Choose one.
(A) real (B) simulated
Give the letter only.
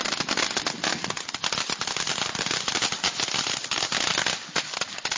A